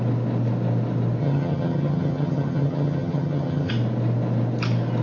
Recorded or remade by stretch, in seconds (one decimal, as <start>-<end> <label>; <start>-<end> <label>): 0.0-1.2 recorded; 1.2-3.7 remade; 3.7-5.0 recorded